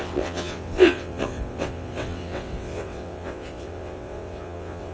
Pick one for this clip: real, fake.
fake